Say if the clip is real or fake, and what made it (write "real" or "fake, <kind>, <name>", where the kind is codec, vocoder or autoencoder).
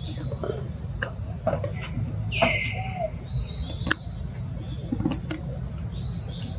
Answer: real